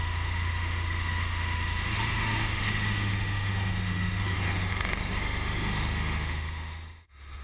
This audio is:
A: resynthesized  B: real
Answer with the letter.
A